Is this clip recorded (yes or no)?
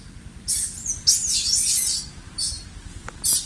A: yes